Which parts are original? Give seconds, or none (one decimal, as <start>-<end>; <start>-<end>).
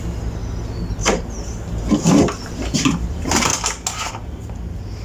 0.0-5.0